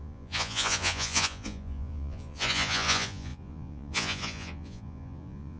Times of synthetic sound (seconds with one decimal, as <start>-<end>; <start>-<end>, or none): 0.0-5.6